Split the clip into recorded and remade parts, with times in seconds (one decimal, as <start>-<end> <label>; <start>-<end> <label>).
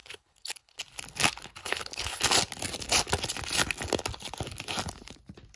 0.0-0.8 remade; 0.8-1.6 recorded; 1.6-2.2 remade; 2.2-5.6 recorded